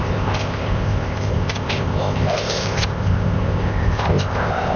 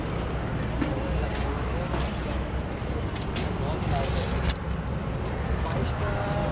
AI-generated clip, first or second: first